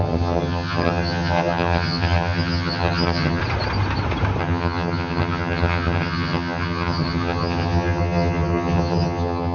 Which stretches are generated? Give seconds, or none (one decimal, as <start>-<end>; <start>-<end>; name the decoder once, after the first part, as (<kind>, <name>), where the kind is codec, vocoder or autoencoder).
0.0-3.4 (vocoder, HiFi-GAN); 4.4-9.5